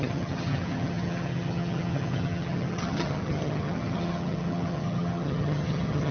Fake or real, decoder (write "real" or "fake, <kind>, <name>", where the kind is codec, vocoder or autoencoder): fake, vocoder, HiFi-GAN